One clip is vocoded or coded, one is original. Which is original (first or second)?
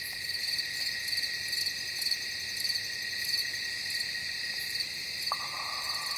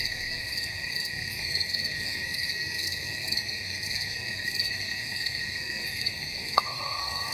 first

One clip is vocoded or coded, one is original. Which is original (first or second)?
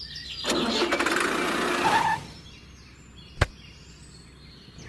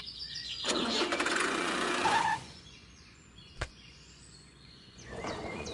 first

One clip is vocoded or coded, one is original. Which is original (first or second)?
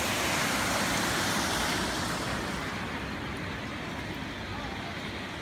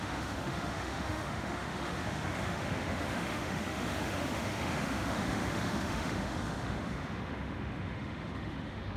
first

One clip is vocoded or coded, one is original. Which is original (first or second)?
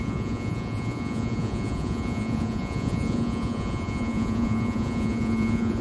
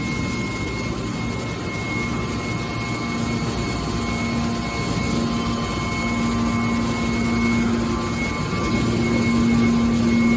second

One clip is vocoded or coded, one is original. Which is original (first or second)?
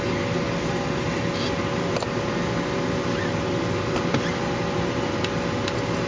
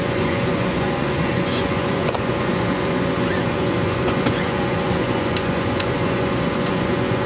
first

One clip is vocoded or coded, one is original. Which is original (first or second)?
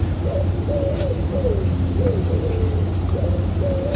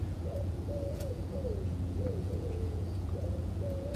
first